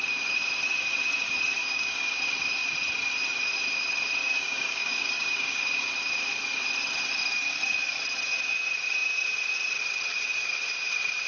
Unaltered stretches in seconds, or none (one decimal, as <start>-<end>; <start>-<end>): 0.0-1.6; 2.2-4.2; 5.9-11.3

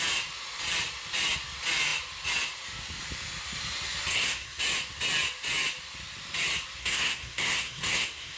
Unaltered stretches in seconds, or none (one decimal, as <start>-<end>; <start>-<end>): 0.0-4.1; 4.6-6.8

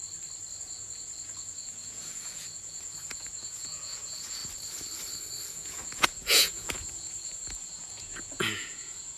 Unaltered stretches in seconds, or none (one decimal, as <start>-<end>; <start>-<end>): 0.0-0.6; 4.4-5.5

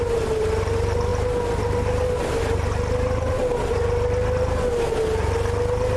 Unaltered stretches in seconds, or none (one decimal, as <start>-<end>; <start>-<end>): 0.0-6.0

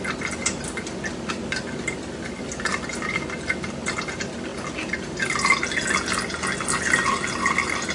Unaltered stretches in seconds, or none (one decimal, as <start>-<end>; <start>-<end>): 0.0-7.9

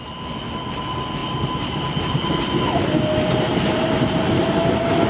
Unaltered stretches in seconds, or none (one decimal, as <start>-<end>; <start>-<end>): 0.0-5.1